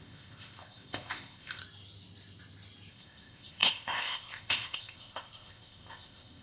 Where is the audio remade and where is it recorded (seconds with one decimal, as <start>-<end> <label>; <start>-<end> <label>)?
0.0-1.6 remade; 1.6-2.9 recorded; 2.9-6.4 remade